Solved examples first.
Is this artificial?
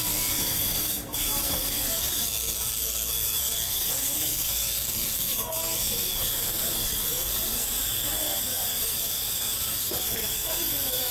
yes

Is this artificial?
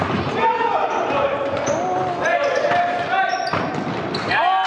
no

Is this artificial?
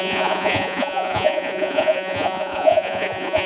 yes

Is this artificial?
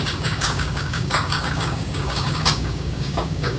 yes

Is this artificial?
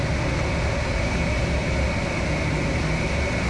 no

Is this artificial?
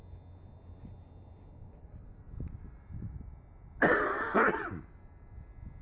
no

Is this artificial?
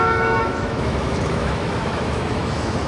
yes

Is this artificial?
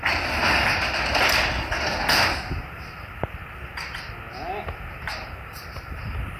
no